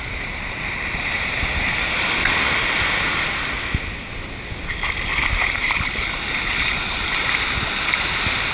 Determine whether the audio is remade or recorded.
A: recorded